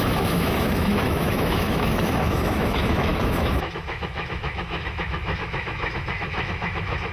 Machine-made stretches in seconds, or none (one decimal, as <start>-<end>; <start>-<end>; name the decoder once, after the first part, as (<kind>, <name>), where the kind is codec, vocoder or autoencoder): 0.0-7.1 (autoencoder, DAC-VAE)